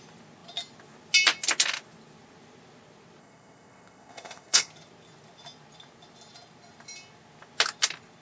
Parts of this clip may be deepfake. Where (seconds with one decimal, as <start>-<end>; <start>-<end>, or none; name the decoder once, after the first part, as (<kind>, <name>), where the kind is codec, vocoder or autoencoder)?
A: 3.2-4.7 (codec, ZipCodec)